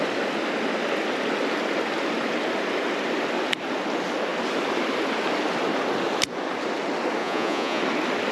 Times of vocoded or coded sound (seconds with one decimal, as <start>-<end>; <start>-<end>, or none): 7.2-7.8